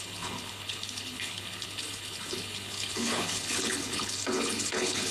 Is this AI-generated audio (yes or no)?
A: yes